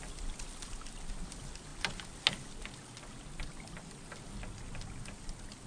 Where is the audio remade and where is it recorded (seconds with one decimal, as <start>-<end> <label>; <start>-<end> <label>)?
0.0-5.7 recorded